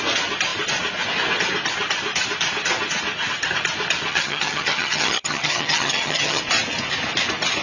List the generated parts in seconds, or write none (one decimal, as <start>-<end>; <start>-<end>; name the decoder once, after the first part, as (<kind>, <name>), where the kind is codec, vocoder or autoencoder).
4.1-6.4 (vocoder, HiFi-GAN)